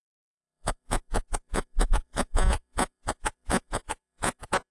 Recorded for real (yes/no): no